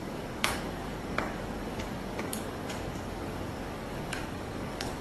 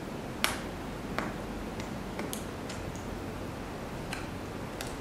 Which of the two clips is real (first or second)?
second